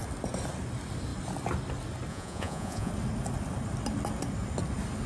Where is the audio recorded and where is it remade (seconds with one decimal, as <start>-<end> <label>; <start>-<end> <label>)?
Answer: 0.0-2.1 recorded; 2.1-2.9 remade; 2.9-5.1 recorded